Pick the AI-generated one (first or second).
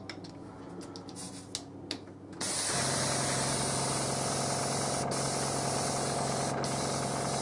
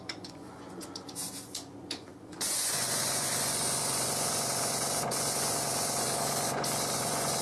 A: second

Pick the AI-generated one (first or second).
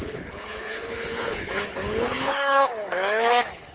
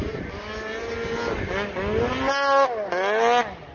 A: first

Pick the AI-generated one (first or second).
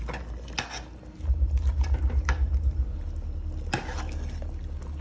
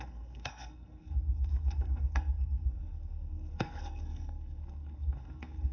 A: second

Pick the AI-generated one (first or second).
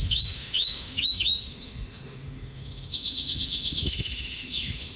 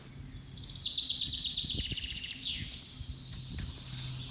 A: first